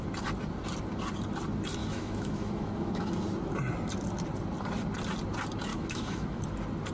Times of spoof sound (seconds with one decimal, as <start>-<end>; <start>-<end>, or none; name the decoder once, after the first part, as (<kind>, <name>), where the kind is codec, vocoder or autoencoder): 1.8-3.1 (autoencoder, DAC-VAE); 5.7-6.4